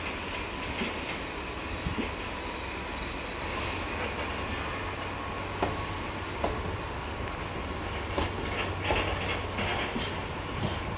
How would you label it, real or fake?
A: real